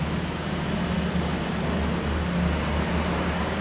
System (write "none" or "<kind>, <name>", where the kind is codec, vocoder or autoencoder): none